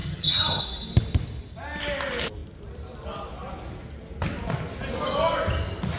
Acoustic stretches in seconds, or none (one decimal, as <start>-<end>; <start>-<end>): 0.6-6.0